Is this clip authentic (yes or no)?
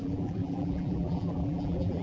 no